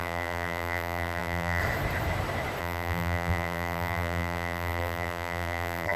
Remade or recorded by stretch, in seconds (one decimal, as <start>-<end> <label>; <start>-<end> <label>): 0.0-1.6 remade; 1.6-2.6 recorded; 2.6-6.0 remade